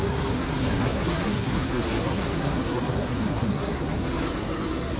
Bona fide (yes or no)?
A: no